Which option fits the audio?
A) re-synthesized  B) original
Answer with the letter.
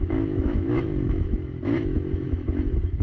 A